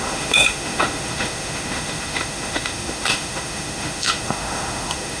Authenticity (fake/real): fake